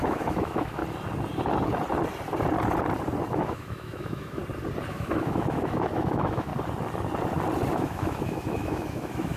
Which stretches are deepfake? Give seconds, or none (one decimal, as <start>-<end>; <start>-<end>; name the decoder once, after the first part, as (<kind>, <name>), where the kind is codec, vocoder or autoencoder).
0.0-0.8 (autoencoder, DAC-VAE); 3.3-4.4; 4.9-6.5; 7.7-9.4